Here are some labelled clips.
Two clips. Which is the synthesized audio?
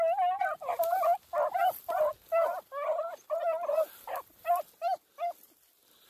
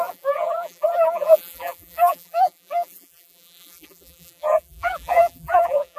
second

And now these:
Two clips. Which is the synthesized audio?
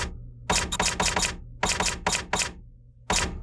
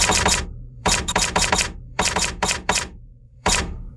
second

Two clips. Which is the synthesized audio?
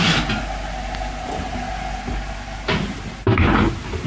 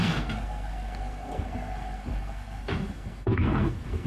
second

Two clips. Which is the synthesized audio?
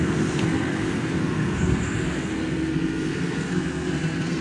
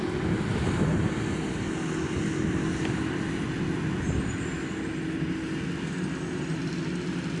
first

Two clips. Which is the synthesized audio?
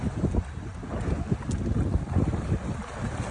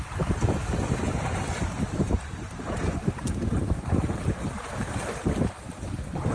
second